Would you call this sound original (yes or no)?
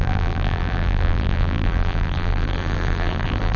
no